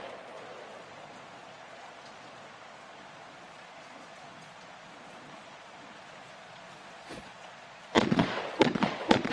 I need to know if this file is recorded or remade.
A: remade